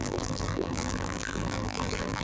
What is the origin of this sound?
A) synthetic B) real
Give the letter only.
A